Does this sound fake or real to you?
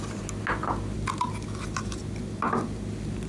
real